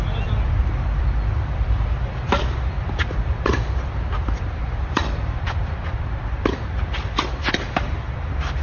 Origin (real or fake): fake